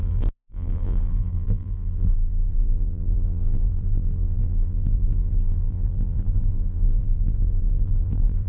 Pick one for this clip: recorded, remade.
remade